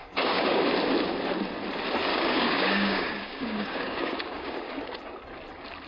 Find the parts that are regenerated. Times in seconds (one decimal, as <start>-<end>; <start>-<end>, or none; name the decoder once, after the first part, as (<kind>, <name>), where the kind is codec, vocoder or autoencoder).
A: 0.0-0.6 (codec, DAC); 2.1-4.7